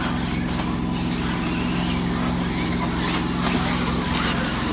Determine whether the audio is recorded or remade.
recorded